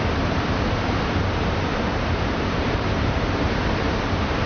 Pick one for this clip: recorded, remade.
remade